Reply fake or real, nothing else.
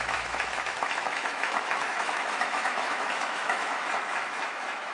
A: fake